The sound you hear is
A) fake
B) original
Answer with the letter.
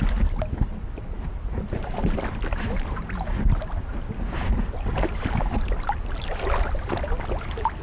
B